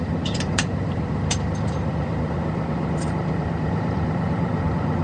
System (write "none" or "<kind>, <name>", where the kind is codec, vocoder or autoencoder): vocoder, BigVGAN v2